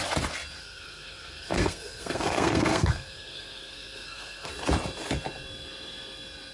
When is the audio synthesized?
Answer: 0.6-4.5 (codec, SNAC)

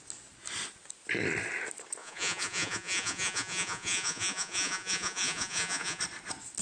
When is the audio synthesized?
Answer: 2.0-6.0 (vocoder, Vocos)

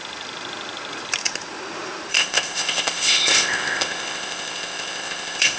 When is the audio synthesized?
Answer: 2.1-5.6 (codec, ZipCodec)

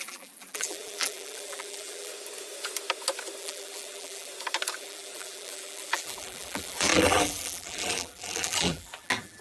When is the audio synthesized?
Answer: 0.0-2.1 (vocoder, BigVGAN v2); 3.4-4.3; 4.8-9.4

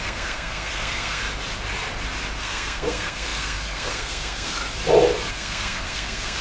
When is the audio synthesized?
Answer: 0.0-1.2 (codec, SNAC); 2.4-4.6; 5.3-6.4